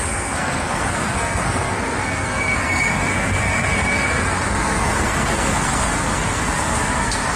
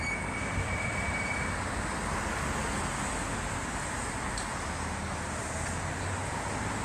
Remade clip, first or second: first